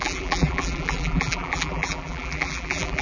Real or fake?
fake